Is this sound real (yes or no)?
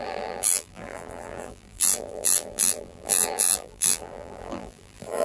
no